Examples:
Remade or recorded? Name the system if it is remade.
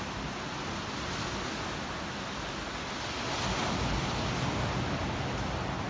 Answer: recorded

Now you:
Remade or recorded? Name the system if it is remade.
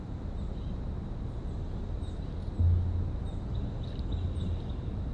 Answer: recorded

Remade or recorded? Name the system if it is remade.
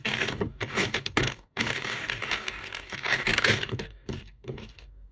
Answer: remade, codec, DAC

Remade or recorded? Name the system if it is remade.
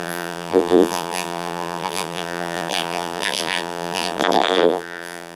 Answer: remade, vocoder, BigVGAN v2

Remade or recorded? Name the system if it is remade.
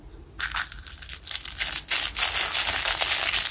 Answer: recorded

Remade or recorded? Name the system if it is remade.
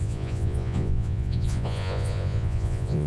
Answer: remade, vocoder, Vocos